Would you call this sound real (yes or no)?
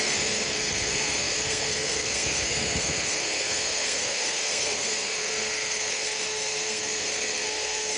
no